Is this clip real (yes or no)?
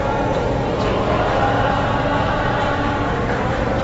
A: yes